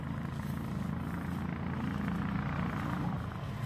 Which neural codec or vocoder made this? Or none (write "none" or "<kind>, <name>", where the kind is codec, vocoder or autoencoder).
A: none